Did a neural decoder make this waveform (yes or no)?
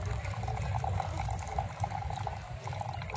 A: no